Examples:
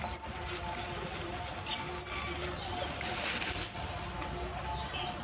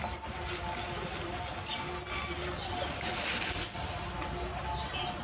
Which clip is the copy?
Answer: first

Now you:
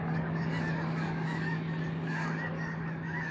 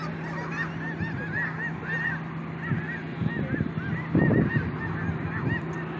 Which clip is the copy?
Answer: first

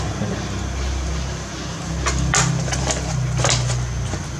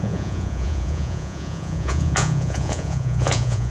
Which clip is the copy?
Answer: second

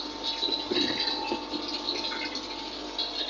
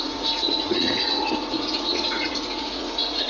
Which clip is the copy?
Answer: second